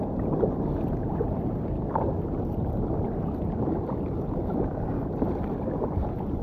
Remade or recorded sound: recorded